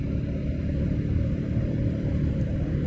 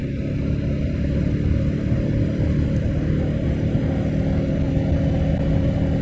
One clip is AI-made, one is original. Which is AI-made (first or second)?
first